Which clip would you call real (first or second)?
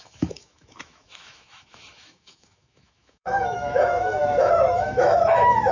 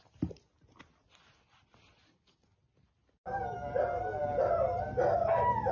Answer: second